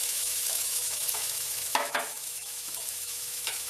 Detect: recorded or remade remade